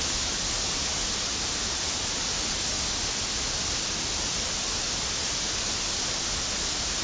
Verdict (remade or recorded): recorded